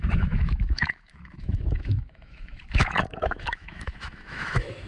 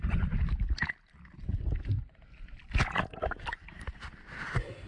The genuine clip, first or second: second